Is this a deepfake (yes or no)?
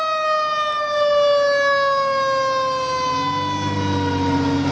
no